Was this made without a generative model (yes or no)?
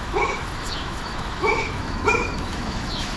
no